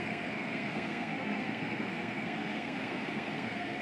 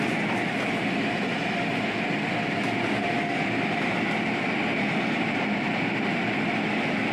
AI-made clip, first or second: first